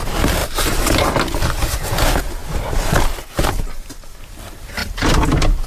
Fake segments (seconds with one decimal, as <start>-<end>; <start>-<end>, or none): none